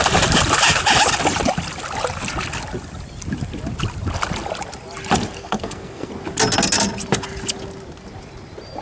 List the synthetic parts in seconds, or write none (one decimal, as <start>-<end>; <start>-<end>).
5.4-6.1